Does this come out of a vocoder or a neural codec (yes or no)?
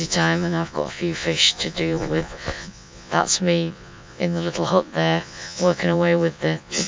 yes